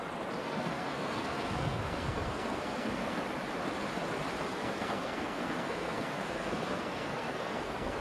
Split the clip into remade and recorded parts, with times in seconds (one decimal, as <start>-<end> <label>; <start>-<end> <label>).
0.0-0.4 recorded; 0.4-3.2 remade; 3.2-4.5 recorded; 4.5-8.0 remade